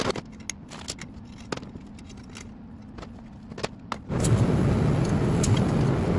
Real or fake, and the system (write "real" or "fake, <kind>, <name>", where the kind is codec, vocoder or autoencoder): real